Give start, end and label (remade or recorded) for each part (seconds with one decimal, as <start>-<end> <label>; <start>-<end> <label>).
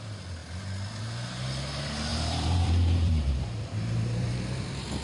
0.0-2.1 recorded; 2.1-4.3 remade; 4.3-5.0 recorded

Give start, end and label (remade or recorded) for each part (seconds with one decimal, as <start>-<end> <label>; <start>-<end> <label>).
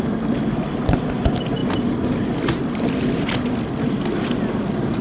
0.0-5.0 recorded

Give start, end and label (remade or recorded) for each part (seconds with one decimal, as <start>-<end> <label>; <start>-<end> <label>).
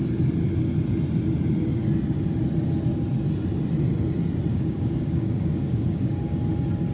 0.0-4.5 recorded; 4.5-6.4 remade; 6.4-6.9 recorded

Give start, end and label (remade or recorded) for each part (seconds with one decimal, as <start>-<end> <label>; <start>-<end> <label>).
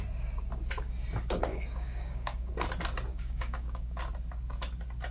0.0-1.5 recorded; 1.5-2.5 remade; 2.5-3.1 recorded; 3.1-4.0 remade; 4.0-5.1 recorded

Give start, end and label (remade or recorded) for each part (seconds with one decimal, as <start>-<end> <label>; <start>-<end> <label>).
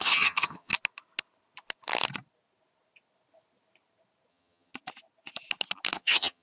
0.0-0.7 remade; 0.7-4.3 recorded; 4.3-4.7 remade; 4.7-6.0 recorded; 6.0-6.4 remade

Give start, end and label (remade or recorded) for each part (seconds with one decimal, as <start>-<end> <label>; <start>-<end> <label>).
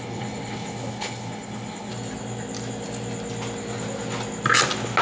0.0-1.9 remade; 1.9-5.0 recorded